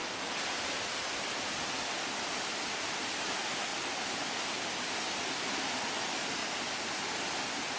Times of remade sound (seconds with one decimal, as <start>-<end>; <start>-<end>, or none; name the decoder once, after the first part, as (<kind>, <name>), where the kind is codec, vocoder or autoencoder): none